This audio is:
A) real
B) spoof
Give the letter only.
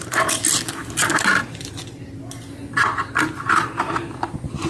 A